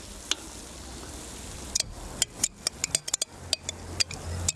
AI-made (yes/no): no